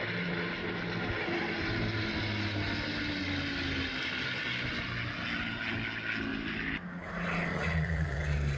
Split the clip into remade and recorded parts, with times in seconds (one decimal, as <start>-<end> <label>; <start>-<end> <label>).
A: 0.0-7.5 recorded; 7.5-8.2 remade; 8.2-8.6 recorded